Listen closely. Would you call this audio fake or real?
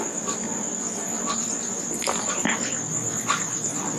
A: real